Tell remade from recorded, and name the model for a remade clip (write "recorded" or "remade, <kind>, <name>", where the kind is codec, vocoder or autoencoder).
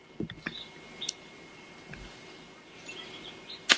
recorded